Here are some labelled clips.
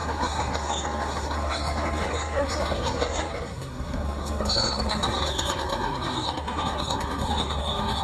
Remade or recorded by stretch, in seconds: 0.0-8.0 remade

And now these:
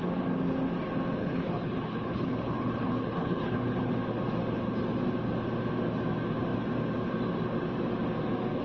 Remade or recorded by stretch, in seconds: 0.0-1.2 recorded; 1.2-3.9 remade; 3.9-8.6 recorded